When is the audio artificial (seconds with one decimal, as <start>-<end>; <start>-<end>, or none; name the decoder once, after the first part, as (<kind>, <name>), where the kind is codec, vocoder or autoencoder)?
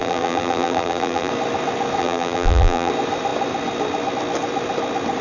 0.0-1.3 (vocoder, BigVGAN v2); 2.0-2.9